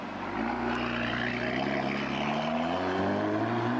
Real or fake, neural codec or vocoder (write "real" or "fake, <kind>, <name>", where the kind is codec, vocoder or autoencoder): real